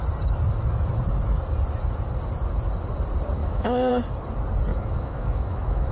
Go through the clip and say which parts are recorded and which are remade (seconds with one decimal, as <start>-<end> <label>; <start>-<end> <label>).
0.0-3.4 recorded; 3.4-3.9 remade; 3.9-4.7 recorded; 4.7-5.9 remade